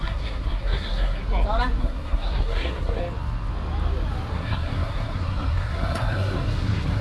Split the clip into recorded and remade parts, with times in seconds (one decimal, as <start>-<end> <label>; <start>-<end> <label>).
0.0-1.2 remade; 1.2-1.8 recorded; 1.8-3.0 remade; 3.0-4.3 recorded; 4.3-7.0 remade